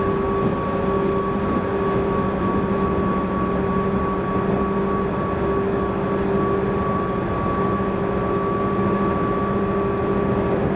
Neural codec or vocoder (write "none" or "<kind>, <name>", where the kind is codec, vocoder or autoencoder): none